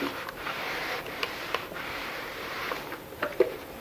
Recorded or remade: remade